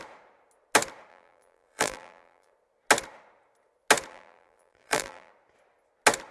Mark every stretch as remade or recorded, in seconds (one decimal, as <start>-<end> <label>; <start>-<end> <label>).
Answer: 0.0-1.1 recorded; 1.1-2.5 remade; 2.5-4.1 recorded; 4.1-5.3 remade; 5.3-6.3 recorded